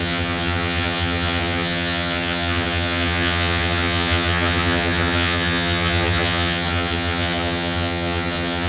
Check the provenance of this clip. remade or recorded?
remade